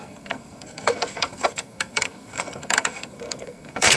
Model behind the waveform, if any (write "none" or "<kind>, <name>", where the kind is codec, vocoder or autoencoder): codec, SNAC